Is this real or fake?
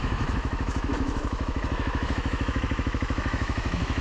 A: fake